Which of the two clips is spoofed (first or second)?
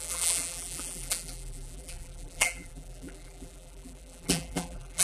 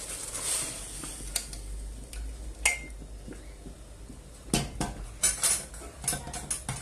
first